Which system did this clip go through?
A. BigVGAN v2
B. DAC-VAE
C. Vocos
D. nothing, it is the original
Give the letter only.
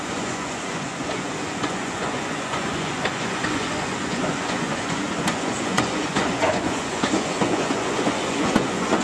C